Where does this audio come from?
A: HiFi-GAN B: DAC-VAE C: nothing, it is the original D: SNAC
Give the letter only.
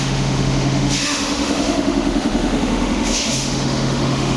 B